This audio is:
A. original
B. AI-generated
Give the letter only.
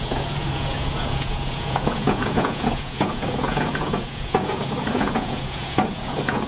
B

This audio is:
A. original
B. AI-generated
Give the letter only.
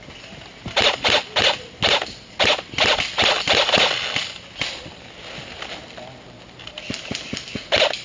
A